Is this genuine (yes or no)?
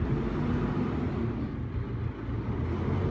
yes